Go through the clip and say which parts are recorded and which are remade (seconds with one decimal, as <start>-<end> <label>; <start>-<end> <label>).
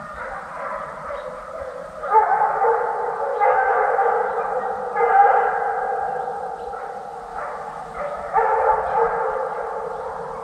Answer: 0.0-3.3 recorded; 3.3-4.1 remade; 4.1-7.3 recorded; 7.3-8.7 remade; 8.7-10.4 recorded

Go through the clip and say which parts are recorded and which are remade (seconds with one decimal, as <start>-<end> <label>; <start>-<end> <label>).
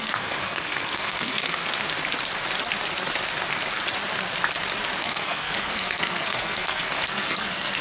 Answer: 0.0-1.6 remade; 1.6-5.0 recorded; 5.0-7.8 remade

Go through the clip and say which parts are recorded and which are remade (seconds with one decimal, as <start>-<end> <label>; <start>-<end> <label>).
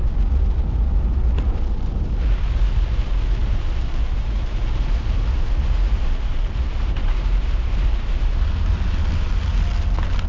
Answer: 0.0-3.4 recorded; 3.4-8.3 remade; 8.3-10.3 recorded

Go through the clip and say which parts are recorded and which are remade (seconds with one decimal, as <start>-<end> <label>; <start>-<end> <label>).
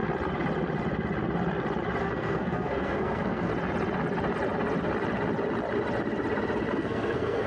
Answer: 0.0-2.0 recorded; 2.0-3.5 remade; 3.5-6.7 recorded; 6.7-7.5 remade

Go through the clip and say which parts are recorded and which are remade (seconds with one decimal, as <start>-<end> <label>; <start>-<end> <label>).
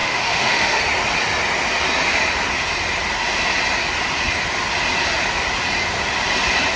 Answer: 0.0-0.8 remade; 0.8-6.8 recorded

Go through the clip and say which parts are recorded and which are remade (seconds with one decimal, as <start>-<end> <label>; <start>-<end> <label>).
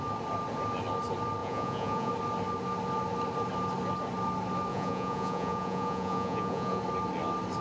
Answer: 0.0-1.4 recorded; 1.4-2.1 remade; 2.1-4.7 recorded; 4.7-6.8 remade; 6.8-7.6 recorded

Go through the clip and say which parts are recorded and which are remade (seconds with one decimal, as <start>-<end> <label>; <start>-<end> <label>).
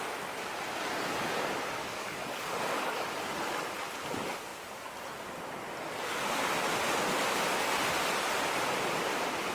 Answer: 0.0-1.8 recorded; 1.8-3.1 remade; 3.1-9.5 recorded